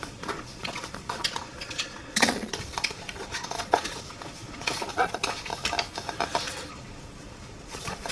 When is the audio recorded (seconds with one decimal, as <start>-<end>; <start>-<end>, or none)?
5.5-6.7